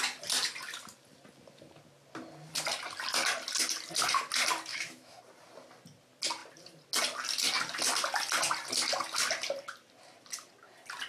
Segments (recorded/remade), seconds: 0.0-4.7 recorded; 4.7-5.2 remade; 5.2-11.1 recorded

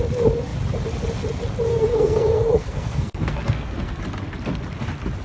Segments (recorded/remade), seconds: 0.0-1.7 recorded; 1.7-4.0 remade; 4.0-5.2 recorded

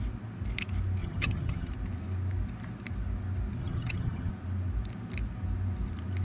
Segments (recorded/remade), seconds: 0.0-1.0 recorded; 1.0-1.7 remade; 1.7-3.6 recorded; 3.6-4.3 remade; 4.3-6.2 recorded

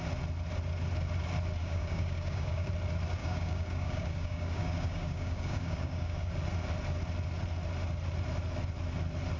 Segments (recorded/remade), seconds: 0.0-1.6 recorded; 1.6-2.7 remade; 2.7-3.2 recorded; 3.2-6.3 remade; 6.3-9.4 recorded

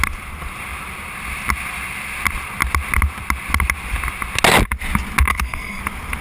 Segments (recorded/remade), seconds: 0.0-5.3 recorded; 5.3-5.8 remade; 5.8-6.2 recorded